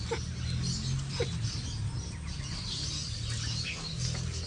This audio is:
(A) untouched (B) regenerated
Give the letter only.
A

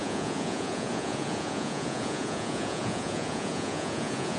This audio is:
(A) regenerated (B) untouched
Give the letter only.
A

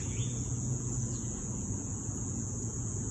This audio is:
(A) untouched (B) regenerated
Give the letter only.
B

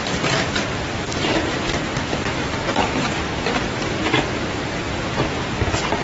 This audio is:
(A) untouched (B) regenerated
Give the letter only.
A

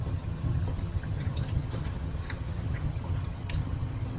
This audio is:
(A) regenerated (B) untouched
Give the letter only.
A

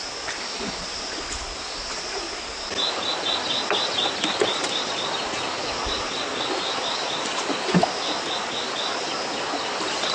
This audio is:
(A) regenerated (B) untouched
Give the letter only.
B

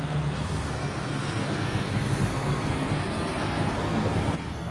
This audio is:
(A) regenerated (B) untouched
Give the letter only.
A